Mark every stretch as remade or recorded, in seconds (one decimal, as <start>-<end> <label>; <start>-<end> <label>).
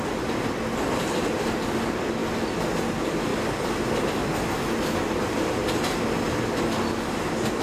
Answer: 0.0-7.6 recorded